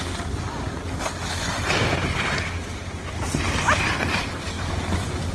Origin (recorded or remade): recorded